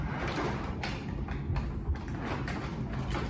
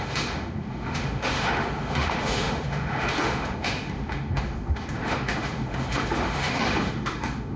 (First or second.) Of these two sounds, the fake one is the second